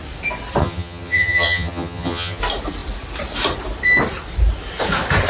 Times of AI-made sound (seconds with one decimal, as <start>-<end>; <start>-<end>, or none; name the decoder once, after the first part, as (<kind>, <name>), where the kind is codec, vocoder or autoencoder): 0.6-2.4 (vocoder, HiFi-GAN)

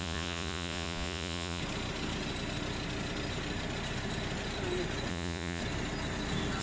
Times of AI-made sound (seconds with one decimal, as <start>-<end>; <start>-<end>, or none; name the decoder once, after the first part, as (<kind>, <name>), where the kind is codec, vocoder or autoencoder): 0.0-1.6 (vocoder, Vocos); 5.1-5.6

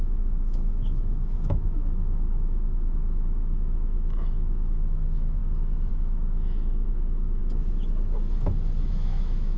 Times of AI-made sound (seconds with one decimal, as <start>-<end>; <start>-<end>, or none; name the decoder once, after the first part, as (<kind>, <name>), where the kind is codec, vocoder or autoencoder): 0.0-5.4 (autoencoder, DAC-VAE); 5.9-7.4; 8.9-9.6

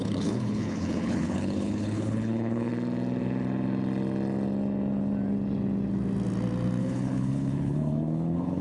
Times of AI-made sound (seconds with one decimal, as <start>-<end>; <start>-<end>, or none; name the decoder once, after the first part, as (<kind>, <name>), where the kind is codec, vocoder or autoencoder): 0.0-2.7 (codec, HILCodec); 6.8-8.6

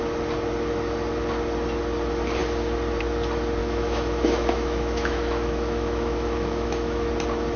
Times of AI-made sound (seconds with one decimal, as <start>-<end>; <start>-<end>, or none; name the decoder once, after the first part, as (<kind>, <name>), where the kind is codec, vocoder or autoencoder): 3.6-7.1 (autoencoder, DAC-VAE)

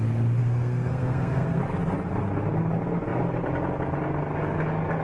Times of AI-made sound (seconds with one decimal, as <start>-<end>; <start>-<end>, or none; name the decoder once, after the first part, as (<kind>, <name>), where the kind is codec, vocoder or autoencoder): 0.4-1.6 (codec, SNAC)

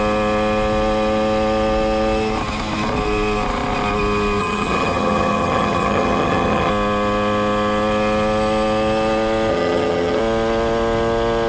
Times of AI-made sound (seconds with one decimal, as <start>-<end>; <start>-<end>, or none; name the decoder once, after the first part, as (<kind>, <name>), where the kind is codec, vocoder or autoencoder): 4.4-6.7 (vocoder, HiFi-GAN); 9.5-10.2